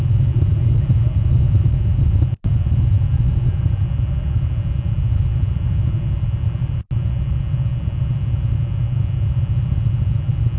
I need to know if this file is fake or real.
real